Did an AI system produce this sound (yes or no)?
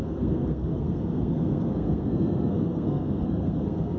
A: yes